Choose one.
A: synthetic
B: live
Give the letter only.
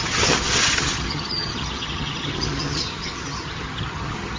A